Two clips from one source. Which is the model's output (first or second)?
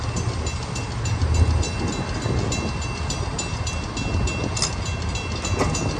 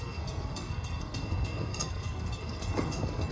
second